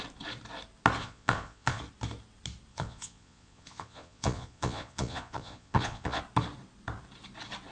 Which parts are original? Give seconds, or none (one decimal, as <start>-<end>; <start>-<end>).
0.0-1.0; 1.8-2.7; 6.2-7.7